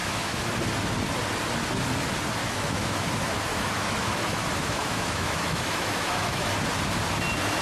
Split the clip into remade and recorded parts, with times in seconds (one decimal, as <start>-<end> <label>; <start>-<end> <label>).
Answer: 0.0-0.5 remade; 0.5-2.4 recorded; 2.4-3.1 remade; 3.1-3.5 recorded; 3.5-6.5 remade; 6.5-7.6 recorded